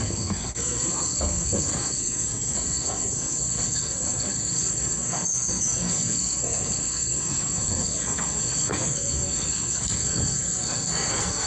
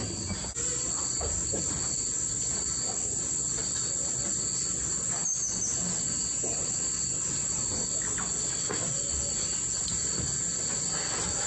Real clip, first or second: second